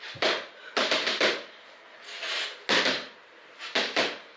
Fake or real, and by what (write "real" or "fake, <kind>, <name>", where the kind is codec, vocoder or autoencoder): real